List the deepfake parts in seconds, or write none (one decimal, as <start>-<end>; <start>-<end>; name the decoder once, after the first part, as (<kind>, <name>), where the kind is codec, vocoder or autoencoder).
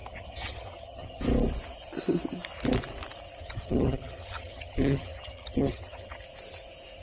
0.0-1.2 (vocoder, HiFi-GAN); 3.4-6.2